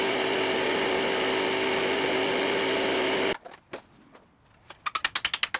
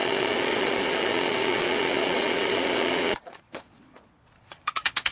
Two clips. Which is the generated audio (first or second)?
second